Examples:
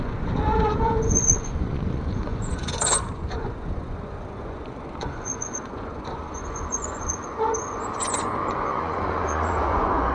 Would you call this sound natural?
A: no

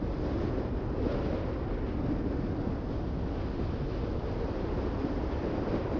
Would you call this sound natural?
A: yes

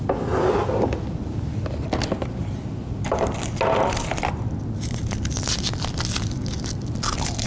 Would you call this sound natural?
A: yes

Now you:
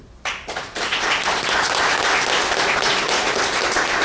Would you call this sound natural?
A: yes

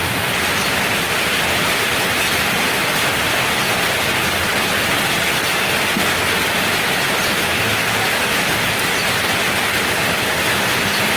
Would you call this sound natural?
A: yes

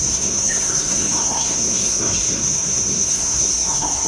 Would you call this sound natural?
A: no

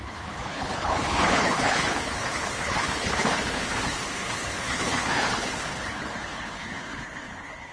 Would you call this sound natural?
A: no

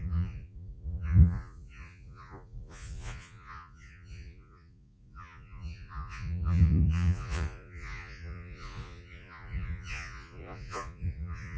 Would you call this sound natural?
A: no